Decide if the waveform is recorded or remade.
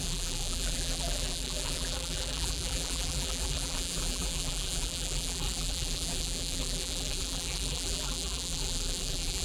remade